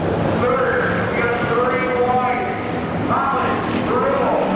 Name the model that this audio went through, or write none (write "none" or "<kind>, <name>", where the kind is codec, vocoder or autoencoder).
none